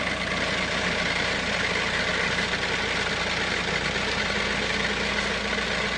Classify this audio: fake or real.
real